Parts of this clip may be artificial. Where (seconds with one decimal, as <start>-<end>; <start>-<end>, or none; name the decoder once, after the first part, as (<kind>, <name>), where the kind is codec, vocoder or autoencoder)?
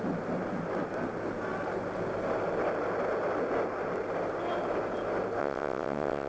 5.4-6.3 (vocoder, WaveNeXt)